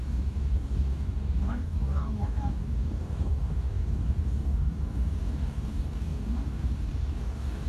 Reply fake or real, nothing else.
fake